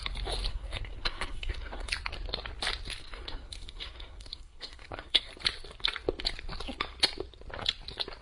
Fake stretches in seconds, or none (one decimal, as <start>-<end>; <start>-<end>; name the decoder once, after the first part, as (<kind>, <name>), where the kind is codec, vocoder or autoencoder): 0.5-1.9 (codec, SNAC); 3.0-5.3

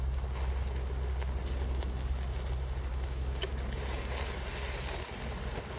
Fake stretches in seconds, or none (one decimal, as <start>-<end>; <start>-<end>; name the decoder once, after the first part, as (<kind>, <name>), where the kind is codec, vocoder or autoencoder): 2.9-3.5 (autoencoder, DAC-VAE)